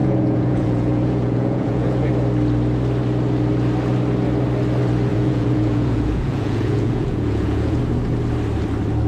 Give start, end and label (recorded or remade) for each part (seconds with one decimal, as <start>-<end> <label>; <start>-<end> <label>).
0.0-2.1 remade; 2.1-5.1 recorded; 5.1-7.8 remade; 7.8-9.1 recorded